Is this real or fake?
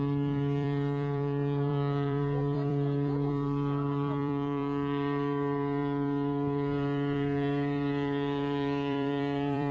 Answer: fake